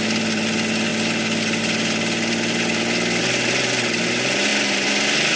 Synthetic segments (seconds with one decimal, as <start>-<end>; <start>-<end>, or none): none